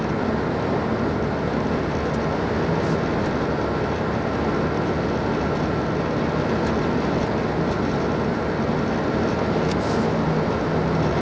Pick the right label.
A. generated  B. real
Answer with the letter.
B